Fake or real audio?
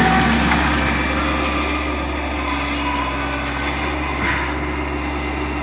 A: real